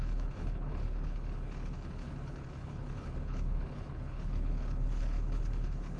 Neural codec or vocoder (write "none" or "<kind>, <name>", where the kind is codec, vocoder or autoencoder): codec, HILCodec